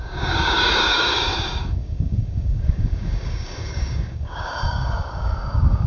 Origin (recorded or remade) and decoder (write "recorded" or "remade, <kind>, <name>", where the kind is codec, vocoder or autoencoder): remade, codec, DAC